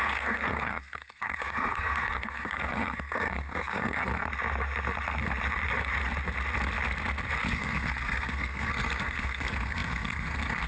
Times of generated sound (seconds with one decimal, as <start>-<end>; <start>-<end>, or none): 0.0-4.0; 7.5-10.7